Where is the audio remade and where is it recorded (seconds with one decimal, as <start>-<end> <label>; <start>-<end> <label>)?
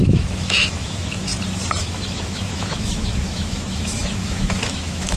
0.0-1.3 remade; 1.3-1.8 recorded; 1.8-5.2 remade